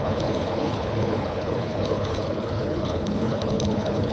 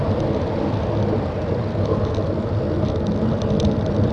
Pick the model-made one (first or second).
first